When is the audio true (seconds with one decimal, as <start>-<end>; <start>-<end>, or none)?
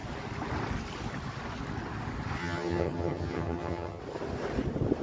0.0-2.4; 4.0-5.0